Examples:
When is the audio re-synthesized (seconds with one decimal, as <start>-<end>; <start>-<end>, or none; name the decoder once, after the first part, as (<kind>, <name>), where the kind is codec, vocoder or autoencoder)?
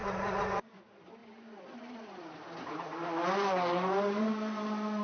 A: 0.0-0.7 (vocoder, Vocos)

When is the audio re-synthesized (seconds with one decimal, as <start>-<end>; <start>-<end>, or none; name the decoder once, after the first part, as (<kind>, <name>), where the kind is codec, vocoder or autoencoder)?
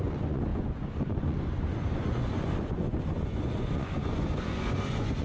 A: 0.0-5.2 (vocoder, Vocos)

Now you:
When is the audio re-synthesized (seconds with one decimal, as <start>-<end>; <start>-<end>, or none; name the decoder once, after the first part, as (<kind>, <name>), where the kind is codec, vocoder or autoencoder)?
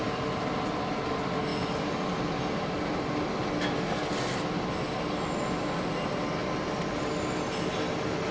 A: none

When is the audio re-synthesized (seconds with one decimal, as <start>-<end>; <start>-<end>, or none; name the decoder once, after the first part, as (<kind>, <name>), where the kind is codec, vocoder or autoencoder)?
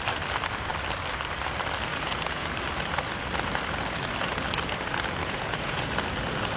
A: 1.9-2.5 (vocoder, Vocos); 5.2-5.9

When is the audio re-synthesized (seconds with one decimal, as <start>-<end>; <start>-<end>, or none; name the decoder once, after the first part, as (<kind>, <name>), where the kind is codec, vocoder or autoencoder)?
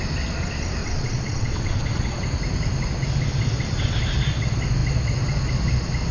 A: 0.8-2.2 (vocoder, Vocos)